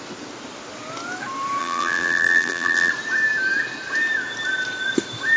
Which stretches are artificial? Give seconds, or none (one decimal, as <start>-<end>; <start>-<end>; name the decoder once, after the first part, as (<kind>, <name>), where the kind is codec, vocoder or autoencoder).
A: 1.6-2.9 (vocoder, BigVGAN v2)